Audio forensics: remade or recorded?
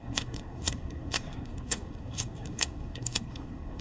remade